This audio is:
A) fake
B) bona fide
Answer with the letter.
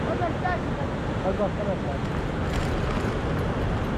B